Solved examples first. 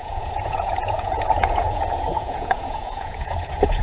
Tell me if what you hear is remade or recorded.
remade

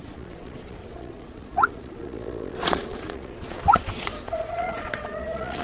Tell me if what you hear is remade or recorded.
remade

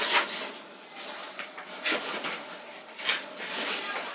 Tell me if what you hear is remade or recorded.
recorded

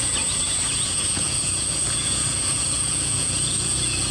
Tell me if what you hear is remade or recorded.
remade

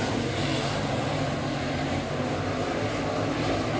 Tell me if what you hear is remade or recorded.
recorded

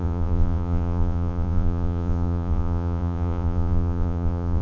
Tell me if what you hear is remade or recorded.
remade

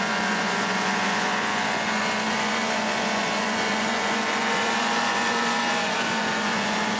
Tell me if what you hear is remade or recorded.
remade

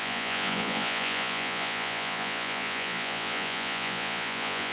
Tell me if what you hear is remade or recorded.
remade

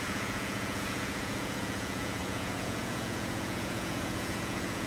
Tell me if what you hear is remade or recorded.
remade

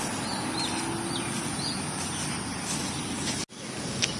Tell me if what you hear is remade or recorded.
recorded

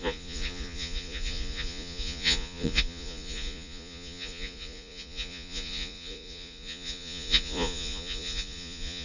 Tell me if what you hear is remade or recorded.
remade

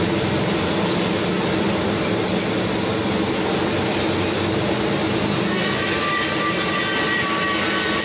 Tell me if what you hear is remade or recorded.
recorded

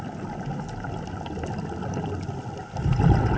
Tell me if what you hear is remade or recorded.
recorded